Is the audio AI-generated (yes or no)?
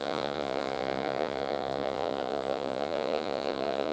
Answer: yes